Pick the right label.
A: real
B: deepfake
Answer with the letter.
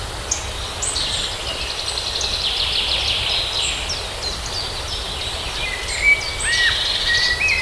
A